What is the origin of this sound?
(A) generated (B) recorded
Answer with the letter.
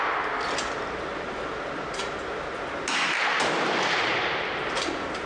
B